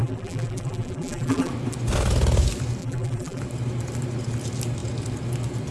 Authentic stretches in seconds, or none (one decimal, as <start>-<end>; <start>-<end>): 1.5-2.8; 3.4-5.7

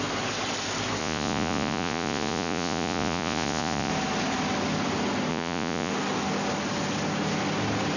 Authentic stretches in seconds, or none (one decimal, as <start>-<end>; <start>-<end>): 0.0-1.0; 3.9-5.3; 5.9-8.0